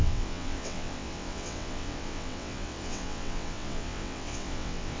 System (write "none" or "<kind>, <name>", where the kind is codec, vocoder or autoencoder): vocoder, WaveNeXt